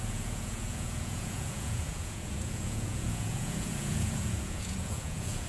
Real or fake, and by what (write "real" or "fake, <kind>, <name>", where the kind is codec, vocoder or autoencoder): fake, vocoder, Vocos